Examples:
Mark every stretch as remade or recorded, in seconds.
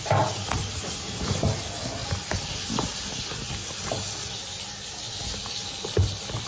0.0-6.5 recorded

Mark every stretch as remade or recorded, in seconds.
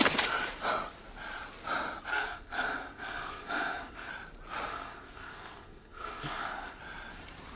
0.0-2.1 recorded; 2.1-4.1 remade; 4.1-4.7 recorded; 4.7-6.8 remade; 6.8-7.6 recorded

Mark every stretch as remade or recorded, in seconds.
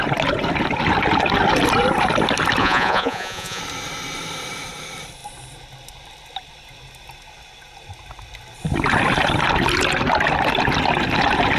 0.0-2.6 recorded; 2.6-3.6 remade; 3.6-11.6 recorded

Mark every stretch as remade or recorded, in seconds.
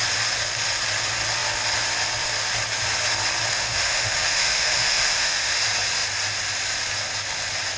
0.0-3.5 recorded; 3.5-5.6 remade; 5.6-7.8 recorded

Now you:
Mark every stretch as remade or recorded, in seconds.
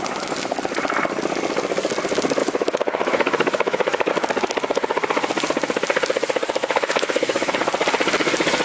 0.0-2.4 recorded; 2.4-4.1 remade; 4.1-6.6 recorded; 6.6-7.5 remade; 7.5-8.6 recorded